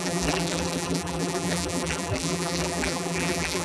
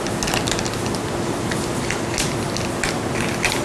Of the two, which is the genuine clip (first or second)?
second